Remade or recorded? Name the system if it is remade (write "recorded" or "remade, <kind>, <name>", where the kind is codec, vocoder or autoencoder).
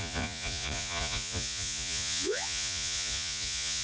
remade, vocoder, Vocos